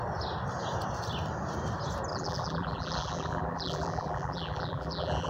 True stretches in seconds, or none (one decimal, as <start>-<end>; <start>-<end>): 0.0-2.1